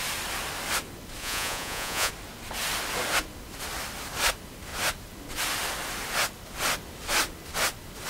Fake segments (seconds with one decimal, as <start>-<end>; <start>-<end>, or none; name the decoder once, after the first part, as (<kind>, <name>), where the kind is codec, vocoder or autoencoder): 1.2-2.1 (vocoder, Vocos)

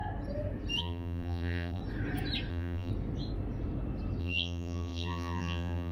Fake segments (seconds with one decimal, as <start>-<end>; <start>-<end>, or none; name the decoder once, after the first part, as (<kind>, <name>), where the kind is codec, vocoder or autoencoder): 0.8-1.8 (vocoder, BigVGAN v2); 2.5-2.9; 4.2-5.9

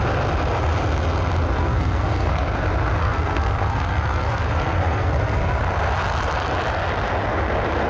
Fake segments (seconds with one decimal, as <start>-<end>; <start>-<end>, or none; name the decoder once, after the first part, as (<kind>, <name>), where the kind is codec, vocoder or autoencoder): 1.6-2.4 (codec, SNAC); 3.0-5.6

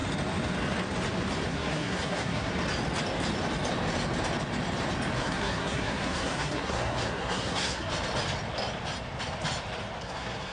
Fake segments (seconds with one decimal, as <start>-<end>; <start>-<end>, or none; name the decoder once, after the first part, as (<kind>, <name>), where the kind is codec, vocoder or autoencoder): 1.5-2.5 (codec, SNAC); 5.2-7.9; 10.0-10.5

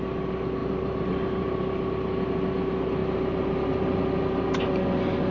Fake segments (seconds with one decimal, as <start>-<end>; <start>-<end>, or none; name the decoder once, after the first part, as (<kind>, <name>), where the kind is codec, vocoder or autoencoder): 0.6-1.6 (vocoder, BigVGAN v2)

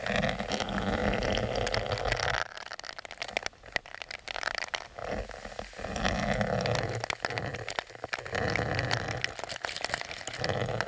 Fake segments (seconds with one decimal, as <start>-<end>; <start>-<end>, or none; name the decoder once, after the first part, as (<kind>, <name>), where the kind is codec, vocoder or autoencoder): none

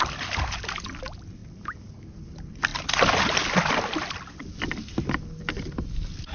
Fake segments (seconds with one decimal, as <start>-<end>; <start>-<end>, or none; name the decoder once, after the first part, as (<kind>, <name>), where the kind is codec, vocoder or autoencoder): none